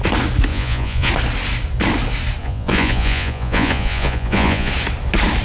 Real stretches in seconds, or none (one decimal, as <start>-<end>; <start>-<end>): 0.0-0.5; 1.1-2.4; 4.7-5.4